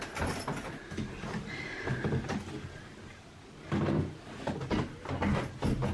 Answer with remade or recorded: recorded